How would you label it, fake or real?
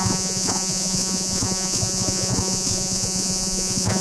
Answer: fake